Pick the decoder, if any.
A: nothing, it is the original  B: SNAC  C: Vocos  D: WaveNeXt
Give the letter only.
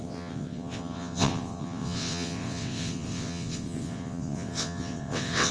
D